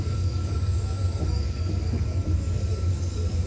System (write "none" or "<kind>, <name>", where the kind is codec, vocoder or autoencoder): codec, DAC